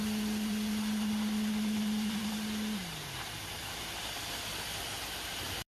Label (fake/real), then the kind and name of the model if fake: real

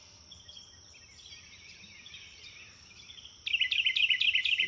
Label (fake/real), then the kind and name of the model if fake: fake, vocoder, BigVGAN v2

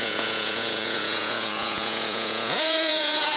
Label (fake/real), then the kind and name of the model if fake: fake, vocoder, Vocos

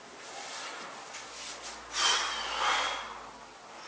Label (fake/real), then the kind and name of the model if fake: real